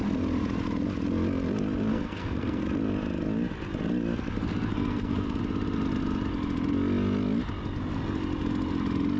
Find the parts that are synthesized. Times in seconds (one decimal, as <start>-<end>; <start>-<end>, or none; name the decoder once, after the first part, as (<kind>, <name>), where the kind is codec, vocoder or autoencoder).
1.9-2.6 (codec, SNAC); 4.7-5.4

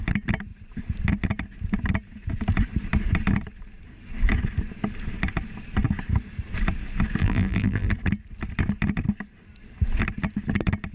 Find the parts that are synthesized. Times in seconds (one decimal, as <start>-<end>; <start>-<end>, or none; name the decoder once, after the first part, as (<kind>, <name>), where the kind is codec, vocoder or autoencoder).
7.2-7.9 (vocoder, BigVGAN v2)

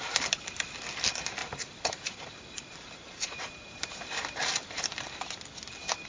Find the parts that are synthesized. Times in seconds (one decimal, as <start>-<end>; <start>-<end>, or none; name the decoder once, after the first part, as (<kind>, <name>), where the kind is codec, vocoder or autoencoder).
1.4-4.8 (vocoder, BigVGAN v2)

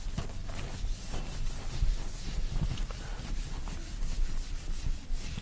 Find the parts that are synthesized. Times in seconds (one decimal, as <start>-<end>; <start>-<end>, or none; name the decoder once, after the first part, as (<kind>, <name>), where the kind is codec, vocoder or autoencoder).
none

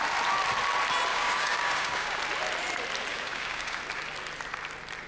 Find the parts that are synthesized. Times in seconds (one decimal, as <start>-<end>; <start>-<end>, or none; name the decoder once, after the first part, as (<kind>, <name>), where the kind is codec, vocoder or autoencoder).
1.1-2.2 (codec, DAC); 3.1-3.8